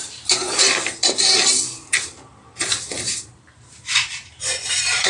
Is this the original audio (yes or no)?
no